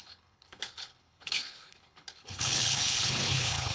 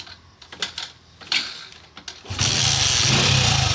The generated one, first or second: first